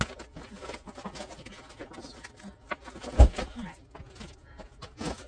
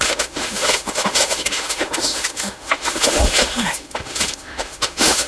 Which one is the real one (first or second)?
first